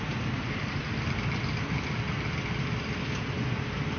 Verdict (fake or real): real